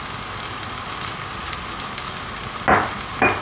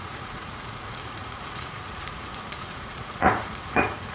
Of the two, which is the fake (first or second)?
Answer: second